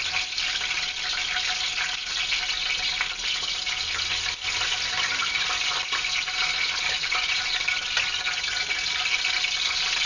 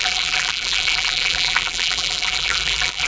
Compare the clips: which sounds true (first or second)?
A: first